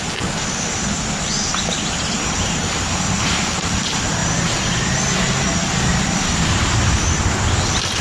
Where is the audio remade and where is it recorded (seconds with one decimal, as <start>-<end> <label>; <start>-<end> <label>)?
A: 0.0-8.0 recorded